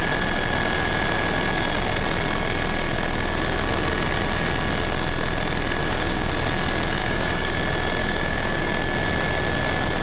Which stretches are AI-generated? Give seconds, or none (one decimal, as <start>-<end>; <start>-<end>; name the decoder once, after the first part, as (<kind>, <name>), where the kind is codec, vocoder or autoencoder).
5.8-6.3 (codec, DAC); 7.0-7.6; 8.0-8.7